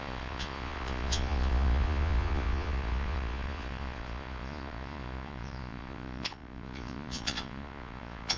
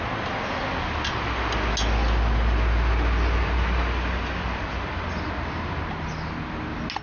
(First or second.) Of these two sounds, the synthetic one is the first